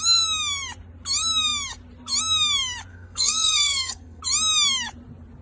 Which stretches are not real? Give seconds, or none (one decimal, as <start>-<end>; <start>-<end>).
2.9-4.2